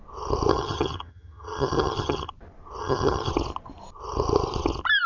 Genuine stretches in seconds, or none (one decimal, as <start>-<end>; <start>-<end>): 0.0-0.5; 2.3-2.8; 3.3-5.1